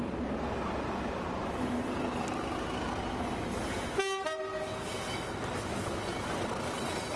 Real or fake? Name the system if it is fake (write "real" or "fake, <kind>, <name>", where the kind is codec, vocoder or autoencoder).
real